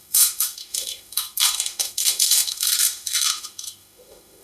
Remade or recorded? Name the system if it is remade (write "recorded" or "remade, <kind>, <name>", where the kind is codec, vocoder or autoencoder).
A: remade, autoencoder, DAC-VAE